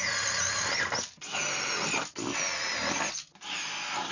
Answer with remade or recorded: recorded